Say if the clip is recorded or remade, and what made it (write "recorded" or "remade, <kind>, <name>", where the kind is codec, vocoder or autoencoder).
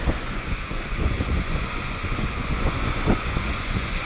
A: remade, vocoder, Vocos